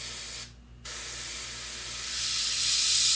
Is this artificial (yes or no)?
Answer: no